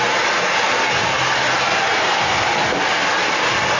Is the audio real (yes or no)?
yes